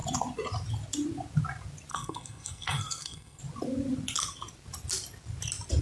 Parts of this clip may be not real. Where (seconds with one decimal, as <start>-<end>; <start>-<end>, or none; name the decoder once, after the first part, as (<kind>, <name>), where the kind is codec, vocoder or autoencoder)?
1.9-3.4 (codec, SNAC)